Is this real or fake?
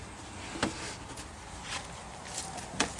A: real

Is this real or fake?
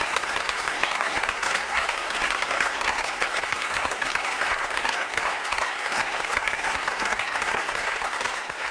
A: fake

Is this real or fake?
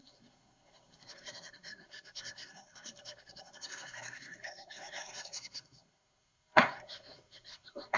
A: fake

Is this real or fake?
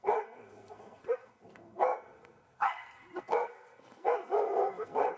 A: fake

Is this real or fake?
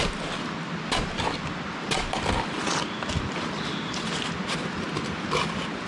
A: real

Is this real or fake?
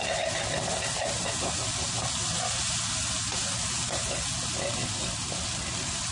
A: real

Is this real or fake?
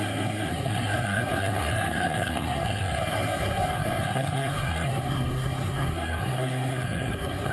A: fake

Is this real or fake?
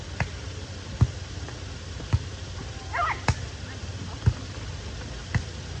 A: real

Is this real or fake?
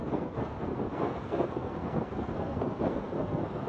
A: fake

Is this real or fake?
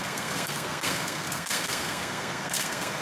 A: fake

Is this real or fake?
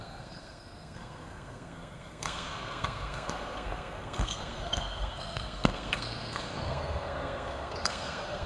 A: fake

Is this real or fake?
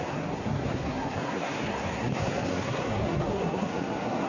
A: fake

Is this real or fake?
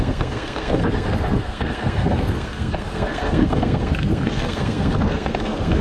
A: fake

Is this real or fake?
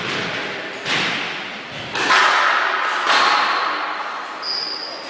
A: real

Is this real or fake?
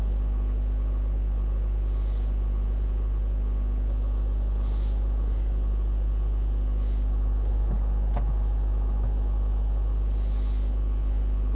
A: real